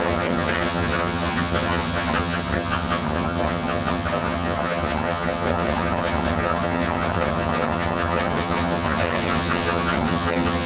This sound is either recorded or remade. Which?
remade